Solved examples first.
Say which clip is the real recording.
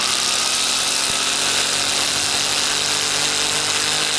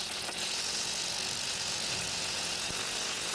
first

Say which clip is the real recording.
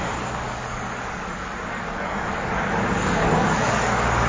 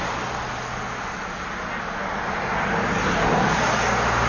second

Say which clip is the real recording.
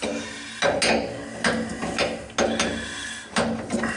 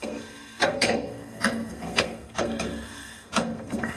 first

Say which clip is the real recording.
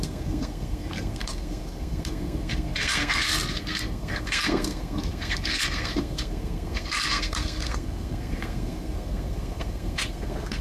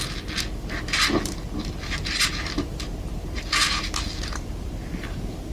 second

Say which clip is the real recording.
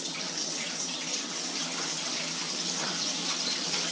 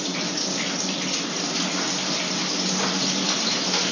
second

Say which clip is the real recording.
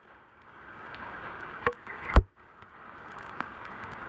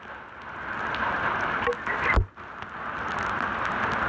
second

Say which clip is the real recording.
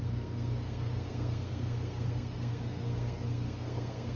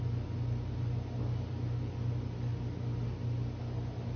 second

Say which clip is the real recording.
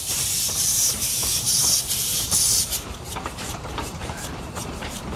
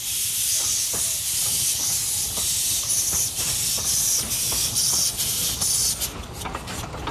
second